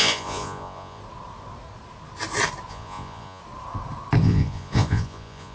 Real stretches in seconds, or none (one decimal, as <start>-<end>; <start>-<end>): 1.0-2.7; 3.4-4.2